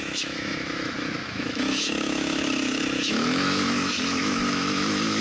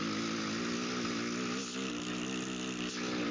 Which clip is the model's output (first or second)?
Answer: first